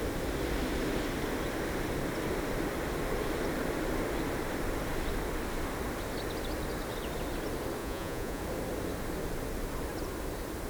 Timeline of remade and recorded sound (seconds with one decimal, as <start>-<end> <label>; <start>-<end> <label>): 0.0-7.8 recorded; 7.8-8.4 remade; 8.4-10.7 recorded